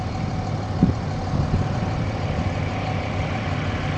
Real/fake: fake